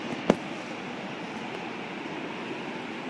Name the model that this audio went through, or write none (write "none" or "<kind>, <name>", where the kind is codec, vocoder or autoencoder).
none